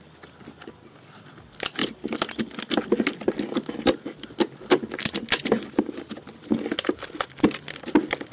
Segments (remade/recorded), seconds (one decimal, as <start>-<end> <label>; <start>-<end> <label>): 0.0-1.8 recorded; 1.8-2.4 remade; 2.4-8.3 recorded